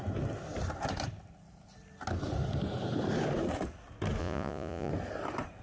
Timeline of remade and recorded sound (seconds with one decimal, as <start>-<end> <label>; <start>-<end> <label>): 0.0-4.2 recorded; 4.2-4.9 remade; 4.9-5.6 recorded